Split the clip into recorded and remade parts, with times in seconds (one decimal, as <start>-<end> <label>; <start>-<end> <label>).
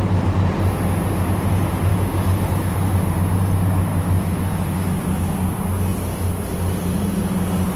0.0-1.9 recorded; 1.9-2.7 remade; 2.7-3.9 recorded; 3.9-5.3 remade; 5.3-7.8 recorded